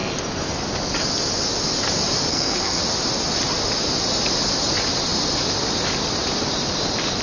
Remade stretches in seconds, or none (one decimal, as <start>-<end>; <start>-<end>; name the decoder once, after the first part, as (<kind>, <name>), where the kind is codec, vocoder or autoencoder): 2.3-2.8 (codec, SNAC)